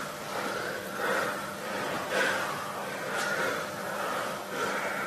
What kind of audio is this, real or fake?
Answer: real